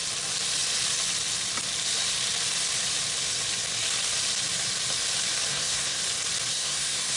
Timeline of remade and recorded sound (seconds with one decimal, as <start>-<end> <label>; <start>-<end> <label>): 0.0-5.5 recorded; 5.5-6.0 remade; 6.0-6.5 recorded; 6.5-7.2 remade